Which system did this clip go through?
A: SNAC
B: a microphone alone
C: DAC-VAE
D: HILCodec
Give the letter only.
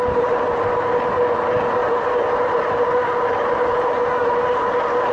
B